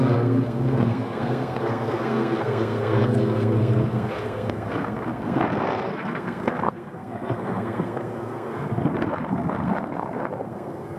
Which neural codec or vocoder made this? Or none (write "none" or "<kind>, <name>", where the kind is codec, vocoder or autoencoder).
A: codec, SNAC